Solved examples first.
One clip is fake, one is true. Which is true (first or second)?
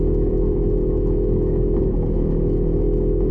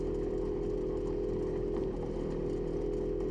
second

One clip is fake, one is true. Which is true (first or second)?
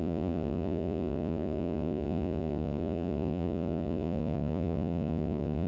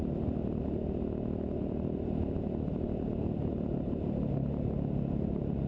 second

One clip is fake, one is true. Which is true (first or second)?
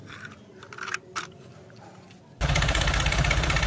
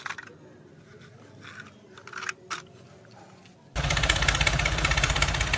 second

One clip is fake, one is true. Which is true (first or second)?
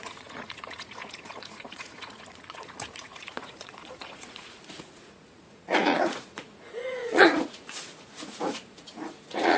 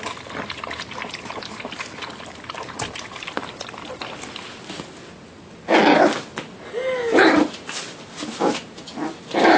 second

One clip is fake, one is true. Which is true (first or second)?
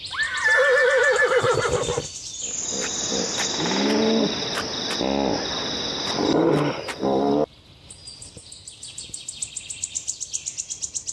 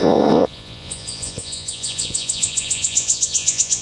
first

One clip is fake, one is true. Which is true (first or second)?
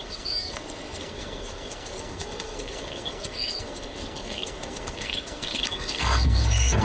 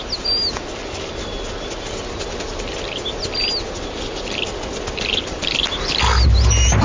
second